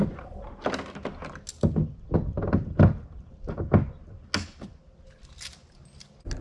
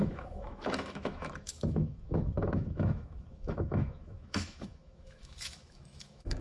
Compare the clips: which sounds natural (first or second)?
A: first